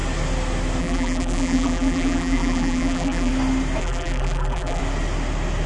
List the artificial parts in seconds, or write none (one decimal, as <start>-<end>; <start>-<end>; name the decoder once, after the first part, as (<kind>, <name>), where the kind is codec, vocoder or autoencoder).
0.8-3.3 (vocoder, BigVGAN v2); 3.8-4.8